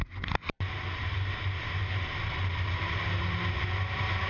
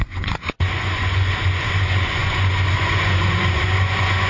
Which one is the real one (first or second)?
first